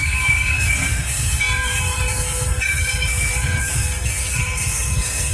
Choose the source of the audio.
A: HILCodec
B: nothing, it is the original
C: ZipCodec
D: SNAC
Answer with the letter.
D